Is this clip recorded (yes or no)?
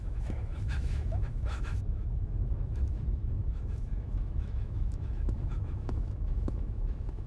no